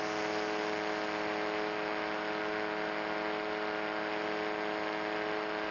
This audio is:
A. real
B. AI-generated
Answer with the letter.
A